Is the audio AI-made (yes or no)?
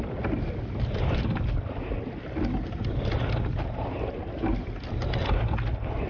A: no